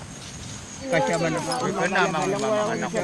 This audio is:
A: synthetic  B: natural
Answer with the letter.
B